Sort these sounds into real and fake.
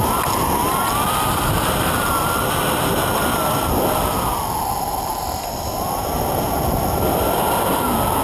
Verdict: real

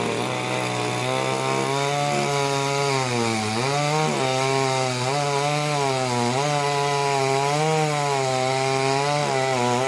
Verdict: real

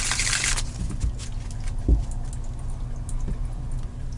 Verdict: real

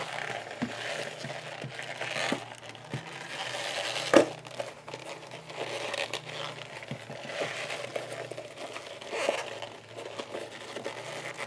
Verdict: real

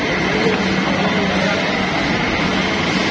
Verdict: real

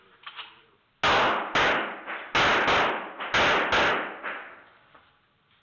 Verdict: real